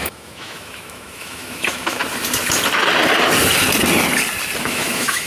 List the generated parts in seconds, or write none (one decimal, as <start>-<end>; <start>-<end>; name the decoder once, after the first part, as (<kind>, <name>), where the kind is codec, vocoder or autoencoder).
0.0-2.0 (autoencoder, DAC-VAE); 4.6-5.3